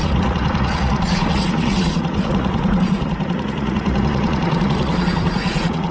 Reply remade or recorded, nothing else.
remade